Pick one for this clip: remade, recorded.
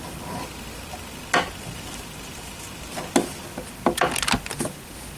recorded